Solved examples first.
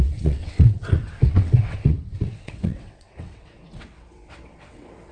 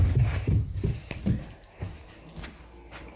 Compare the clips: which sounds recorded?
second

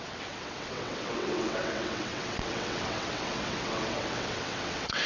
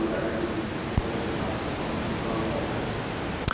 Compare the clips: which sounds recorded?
second